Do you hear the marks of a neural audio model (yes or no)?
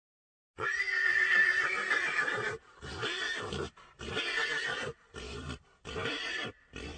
yes